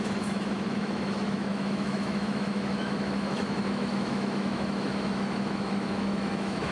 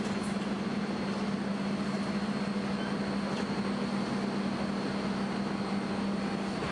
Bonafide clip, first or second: second